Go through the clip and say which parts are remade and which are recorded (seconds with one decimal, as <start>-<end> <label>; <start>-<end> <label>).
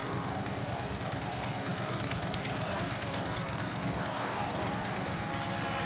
0.0-5.3 remade; 5.3-5.9 recorded